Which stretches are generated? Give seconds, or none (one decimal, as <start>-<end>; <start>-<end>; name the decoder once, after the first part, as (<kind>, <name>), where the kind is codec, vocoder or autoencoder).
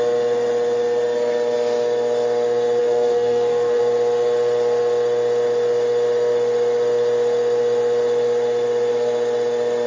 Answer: 2.8-3.8 (codec, SNAC)